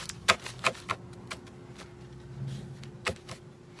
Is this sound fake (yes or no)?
no